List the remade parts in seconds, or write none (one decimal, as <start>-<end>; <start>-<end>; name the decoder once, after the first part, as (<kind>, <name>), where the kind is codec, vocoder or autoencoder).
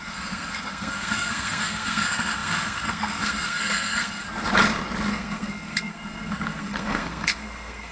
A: 0.0-4.2 (codec, SNAC); 5.1-7.9